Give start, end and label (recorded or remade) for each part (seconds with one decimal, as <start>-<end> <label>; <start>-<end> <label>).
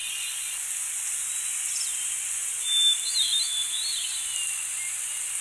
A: 0.0-5.4 recorded